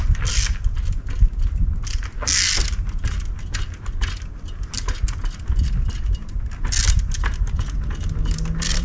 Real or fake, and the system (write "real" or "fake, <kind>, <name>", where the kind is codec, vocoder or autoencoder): real